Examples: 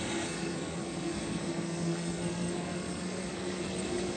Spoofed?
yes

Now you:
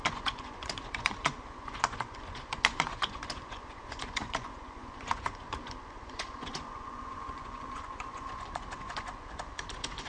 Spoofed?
yes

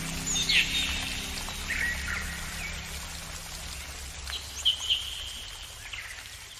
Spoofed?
no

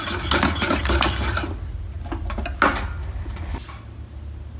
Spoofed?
no